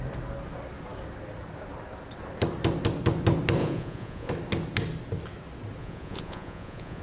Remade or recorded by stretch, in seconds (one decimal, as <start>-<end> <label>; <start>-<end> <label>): 0.0-3.6 recorded; 3.6-4.3 remade; 4.3-5.8 recorded; 5.8-7.0 remade

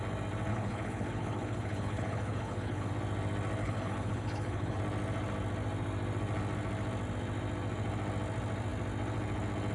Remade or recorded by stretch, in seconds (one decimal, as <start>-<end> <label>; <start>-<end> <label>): 0.0-0.5 recorded; 0.5-2.9 remade; 2.9-3.6 recorded; 3.6-4.8 remade; 4.8-9.7 recorded

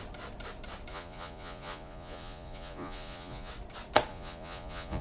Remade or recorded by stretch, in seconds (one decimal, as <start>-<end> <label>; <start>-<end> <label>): 0.0-0.9 recorded; 0.9-3.5 remade; 3.5-4.1 recorded; 4.1-5.0 remade

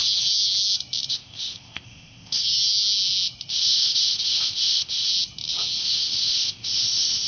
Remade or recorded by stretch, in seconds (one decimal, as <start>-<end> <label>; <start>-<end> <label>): 0.0-1.1 recorded; 1.1-2.4 remade; 2.4-3.5 recorded; 3.5-5.1 remade; 5.1-5.8 recorded; 5.8-7.3 remade

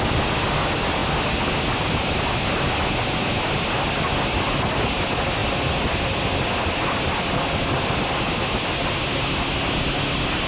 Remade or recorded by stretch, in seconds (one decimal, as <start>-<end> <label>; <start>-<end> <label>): 0.0-10.5 recorded

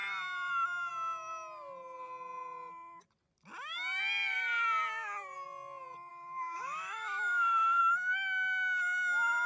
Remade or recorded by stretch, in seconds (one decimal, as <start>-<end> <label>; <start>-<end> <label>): 0.0-6.1 recorded; 6.1-7.8 remade; 7.8-9.5 recorded